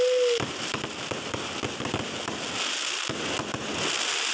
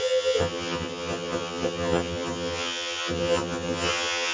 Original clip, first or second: first